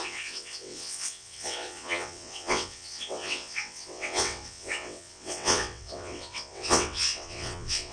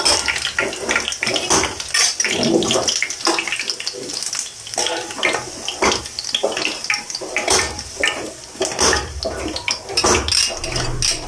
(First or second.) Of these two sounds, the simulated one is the first